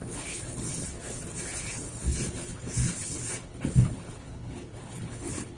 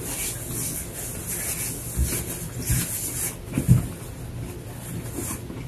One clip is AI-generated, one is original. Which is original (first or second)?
second